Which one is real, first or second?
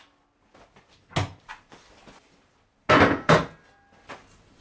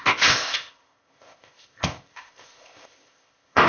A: first